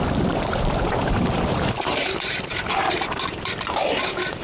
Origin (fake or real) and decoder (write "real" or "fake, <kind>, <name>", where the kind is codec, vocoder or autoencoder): fake, vocoder, BigVGAN v2